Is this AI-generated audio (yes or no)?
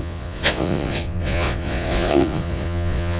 yes